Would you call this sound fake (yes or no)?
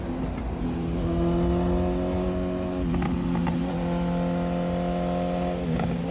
no